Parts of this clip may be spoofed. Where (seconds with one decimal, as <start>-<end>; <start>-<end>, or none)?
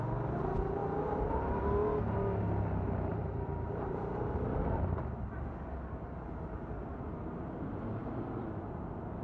3.1-4.6